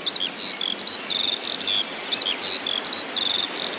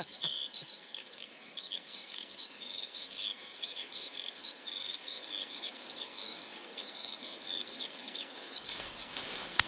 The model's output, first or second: second